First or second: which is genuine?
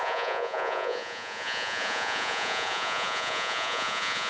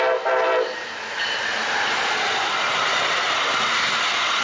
second